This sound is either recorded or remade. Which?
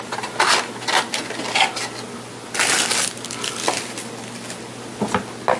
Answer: recorded